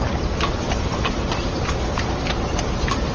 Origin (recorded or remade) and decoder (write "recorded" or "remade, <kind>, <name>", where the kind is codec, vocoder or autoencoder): recorded